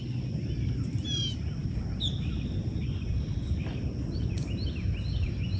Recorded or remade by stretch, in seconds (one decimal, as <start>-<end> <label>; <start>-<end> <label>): 0.0-5.6 recorded